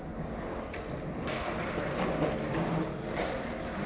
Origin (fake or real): real